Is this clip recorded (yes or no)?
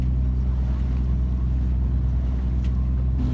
yes